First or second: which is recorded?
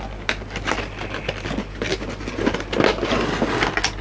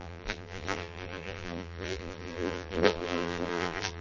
first